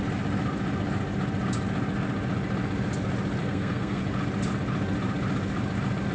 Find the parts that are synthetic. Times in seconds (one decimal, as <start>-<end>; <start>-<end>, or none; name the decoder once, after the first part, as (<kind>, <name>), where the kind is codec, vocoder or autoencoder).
3.4-4.0 (codec, SNAC)